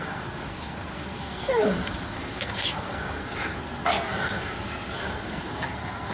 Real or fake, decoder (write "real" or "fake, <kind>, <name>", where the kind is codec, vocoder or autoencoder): fake, codec, SNAC